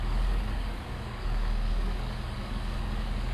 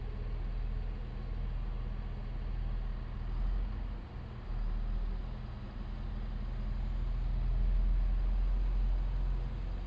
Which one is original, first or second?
second